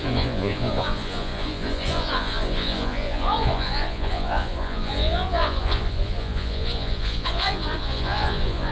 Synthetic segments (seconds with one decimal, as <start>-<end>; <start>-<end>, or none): 0.0-8.7